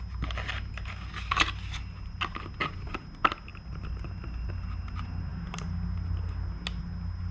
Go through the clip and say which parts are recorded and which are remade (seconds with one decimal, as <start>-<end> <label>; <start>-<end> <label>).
0.0-7.3 recorded